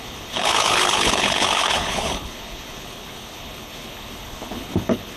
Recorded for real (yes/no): no